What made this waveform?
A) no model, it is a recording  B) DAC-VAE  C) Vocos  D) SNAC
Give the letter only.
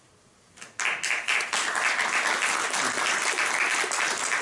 A